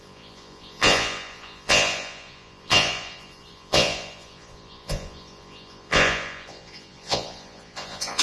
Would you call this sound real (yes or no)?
no